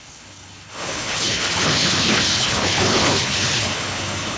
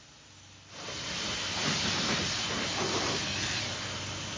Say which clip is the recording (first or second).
second